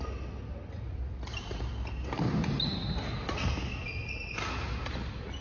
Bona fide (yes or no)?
yes